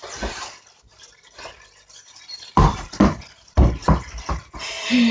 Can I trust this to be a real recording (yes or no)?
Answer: yes